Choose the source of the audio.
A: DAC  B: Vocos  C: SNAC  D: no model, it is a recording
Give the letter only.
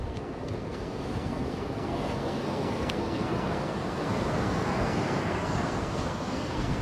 C